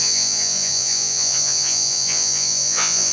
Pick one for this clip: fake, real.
fake